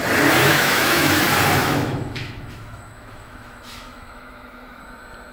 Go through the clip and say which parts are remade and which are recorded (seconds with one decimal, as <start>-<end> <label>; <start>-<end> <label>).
0.0-0.4 recorded; 0.4-1.1 remade; 1.1-1.6 recorded; 1.6-4.8 remade; 4.8-5.3 recorded